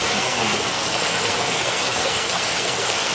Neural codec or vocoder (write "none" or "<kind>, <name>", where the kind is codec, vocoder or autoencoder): codec, SNAC